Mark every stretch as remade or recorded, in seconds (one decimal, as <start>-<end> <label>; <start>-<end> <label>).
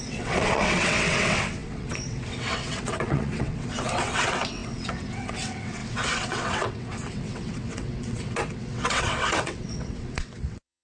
0.0-10.8 remade